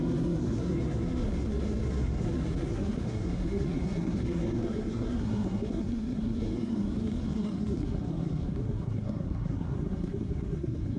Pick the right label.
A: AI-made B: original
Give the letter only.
A